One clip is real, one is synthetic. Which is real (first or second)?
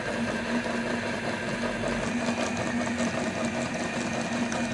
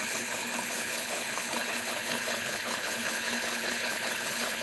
first